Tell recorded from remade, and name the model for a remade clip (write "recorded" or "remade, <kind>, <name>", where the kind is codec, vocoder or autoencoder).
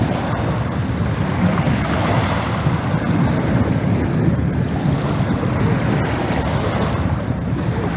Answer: recorded